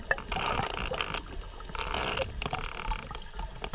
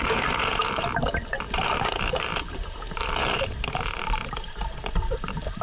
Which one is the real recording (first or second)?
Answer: first